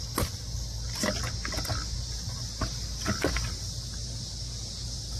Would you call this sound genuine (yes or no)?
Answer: yes